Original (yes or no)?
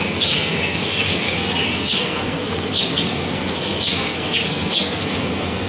no